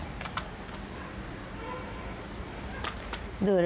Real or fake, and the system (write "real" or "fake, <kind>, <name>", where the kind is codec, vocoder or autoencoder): real